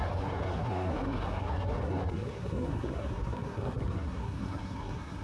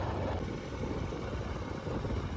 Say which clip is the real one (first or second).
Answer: second